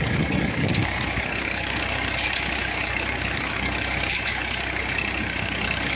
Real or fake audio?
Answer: fake